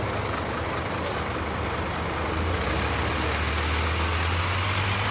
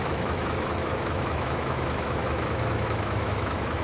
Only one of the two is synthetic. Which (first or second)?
second